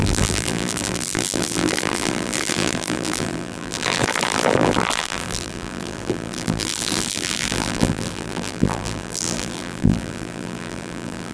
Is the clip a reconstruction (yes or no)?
yes